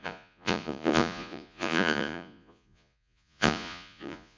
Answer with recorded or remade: remade